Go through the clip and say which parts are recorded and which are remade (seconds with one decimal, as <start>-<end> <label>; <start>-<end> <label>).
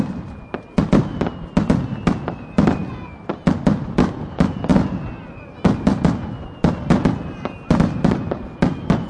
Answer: 0.0-9.1 recorded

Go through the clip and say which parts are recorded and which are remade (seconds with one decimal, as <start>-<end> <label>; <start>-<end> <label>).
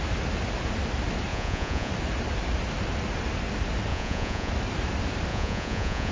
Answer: 0.0-1.3 recorded; 1.3-1.9 remade; 1.9-3.9 recorded; 3.9-4.5 remade; 4.5-5.3 recorded; 5.3-6.1 remade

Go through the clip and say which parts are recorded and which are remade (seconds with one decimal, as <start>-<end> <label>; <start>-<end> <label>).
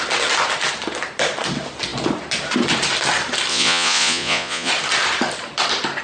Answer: 0.0-3.5 recorded; 3.5-4.7 remade; 4.7-6.0 recorded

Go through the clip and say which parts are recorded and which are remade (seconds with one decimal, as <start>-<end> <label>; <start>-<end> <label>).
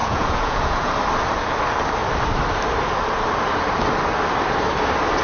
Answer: 0.0-0.9 remade; 0.9-5.2 recorded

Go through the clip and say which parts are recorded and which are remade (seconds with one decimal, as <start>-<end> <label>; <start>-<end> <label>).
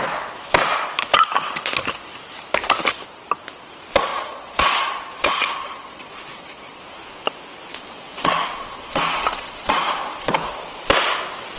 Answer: 0.0-4.1 recorded; 4.1-6.8 remade; 6.8-7.7 recorded; 7.7-10.3 remade; 10.3-11.6 recorded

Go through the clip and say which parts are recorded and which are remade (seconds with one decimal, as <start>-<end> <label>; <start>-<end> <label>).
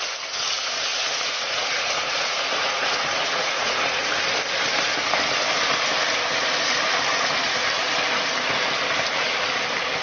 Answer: 0.0-0.9 recorded; 0.9-4.1 remade; 4.1-10.0 recorded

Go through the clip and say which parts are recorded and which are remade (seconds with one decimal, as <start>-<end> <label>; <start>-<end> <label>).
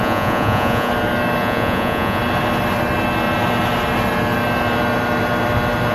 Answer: 0.0-0.9 remade; 0.9-1.4 recorded; 1.4-2.2 remade; 2.2-5.9 recorded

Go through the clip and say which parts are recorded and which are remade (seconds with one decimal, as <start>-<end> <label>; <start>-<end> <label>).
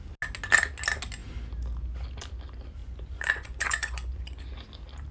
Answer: 0.0-2.8 recorded; 2.8-4.4 remade; 4.4-5.1 recorded